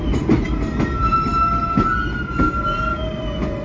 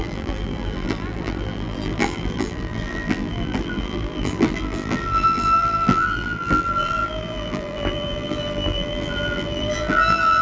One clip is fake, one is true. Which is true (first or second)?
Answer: first